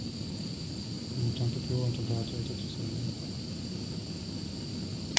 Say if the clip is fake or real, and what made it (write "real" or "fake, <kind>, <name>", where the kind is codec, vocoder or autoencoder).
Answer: real